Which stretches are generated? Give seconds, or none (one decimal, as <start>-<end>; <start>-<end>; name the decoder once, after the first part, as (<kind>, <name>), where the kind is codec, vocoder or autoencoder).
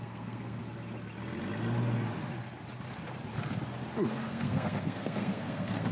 0.0-0.6 (codec, SNAC); 4.1-5.9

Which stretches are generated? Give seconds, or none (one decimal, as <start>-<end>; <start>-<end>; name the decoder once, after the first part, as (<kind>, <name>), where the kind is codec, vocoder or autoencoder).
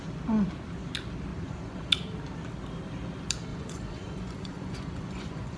1.3-1.9 (vocoder, Vocos); 3.5-5.6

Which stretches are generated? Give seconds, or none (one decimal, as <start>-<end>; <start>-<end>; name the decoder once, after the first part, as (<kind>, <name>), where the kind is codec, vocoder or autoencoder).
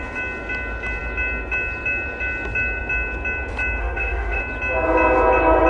3.8-4.4 (autoencoder, DAC-VAE)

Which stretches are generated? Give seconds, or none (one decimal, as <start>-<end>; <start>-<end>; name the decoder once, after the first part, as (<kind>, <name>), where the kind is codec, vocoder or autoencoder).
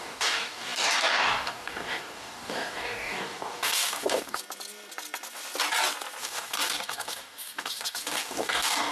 0.0-4.4 (codec, DAC); 6.2-8.9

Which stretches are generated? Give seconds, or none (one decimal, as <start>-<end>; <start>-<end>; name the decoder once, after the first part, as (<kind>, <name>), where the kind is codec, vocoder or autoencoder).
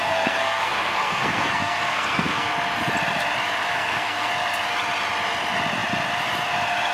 0.0-2.5 (codec, SNAC); 3.7-4.3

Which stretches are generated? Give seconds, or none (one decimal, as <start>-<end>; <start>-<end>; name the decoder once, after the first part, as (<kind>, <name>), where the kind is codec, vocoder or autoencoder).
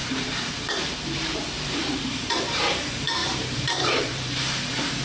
0.0-5.0 (vocoder, BigVGAN v2)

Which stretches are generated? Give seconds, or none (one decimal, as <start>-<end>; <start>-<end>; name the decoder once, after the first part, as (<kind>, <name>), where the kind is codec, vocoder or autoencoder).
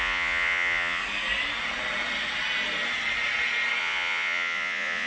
0.0-1.0 (vocoder, Vocos); 3.8-5.1